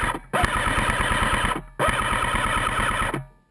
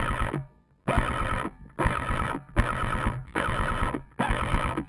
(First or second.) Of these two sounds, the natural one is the first